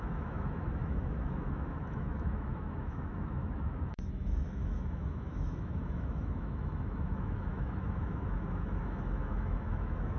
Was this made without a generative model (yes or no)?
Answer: no